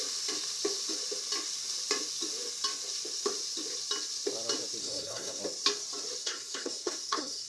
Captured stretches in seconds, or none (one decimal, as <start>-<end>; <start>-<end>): 0.0-4.8; 5.4-6.2